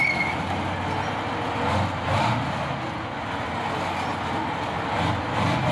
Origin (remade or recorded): recorded